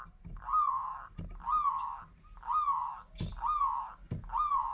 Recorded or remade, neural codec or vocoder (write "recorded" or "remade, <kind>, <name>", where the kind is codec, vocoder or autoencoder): recorded